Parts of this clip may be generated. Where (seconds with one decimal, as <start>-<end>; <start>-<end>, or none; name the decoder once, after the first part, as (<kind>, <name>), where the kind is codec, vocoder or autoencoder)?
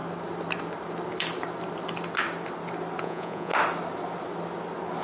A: 3.0-3.5 (vocoder, Vocos)